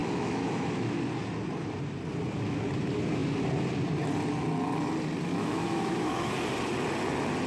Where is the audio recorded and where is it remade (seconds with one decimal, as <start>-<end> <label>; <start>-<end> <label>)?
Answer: 0.0-1.0 remade; 1.0-5.3 recorded; 5.3-6.3 remade; 6.3-7.5 recorded